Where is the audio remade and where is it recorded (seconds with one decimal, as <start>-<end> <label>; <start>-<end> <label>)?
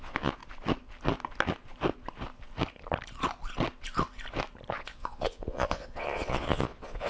0.0-0.4 remade; 0.4-4.7 recorded; 4.7-7.1 remade